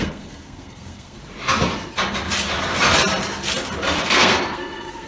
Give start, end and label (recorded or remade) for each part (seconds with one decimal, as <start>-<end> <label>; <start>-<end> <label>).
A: 0.0-1.2 remade; 1.2-4.0 recorded; 4.0-5.1 remade